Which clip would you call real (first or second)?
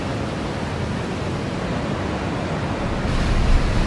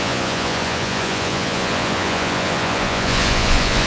first